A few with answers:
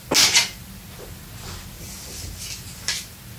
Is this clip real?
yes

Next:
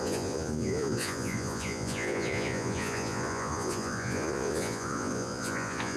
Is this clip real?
no